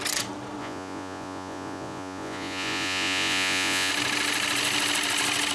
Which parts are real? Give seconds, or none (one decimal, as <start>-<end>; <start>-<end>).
0.0-0.6; 3.9-5.5